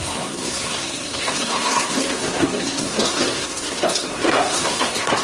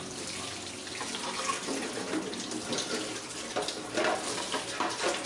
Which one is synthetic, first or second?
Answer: first